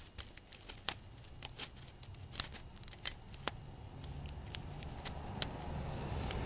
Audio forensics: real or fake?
real